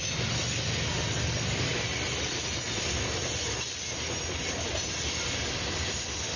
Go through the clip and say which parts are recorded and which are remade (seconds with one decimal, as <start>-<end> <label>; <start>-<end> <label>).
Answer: 0.0-6.4 recorded